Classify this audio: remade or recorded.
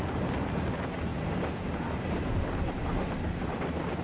recorded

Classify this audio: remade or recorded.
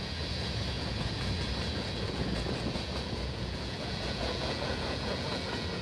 remade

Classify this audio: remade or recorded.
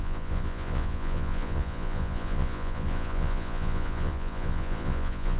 remade